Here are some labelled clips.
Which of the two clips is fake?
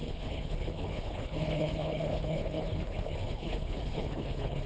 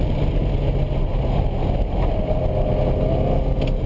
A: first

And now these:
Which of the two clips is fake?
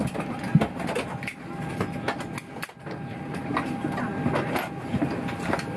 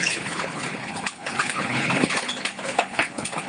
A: second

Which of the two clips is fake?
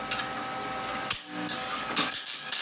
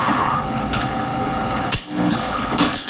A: second